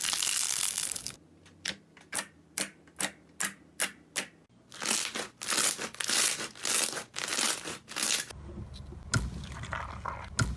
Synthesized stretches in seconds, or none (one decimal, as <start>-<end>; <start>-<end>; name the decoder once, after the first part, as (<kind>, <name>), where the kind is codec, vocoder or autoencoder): none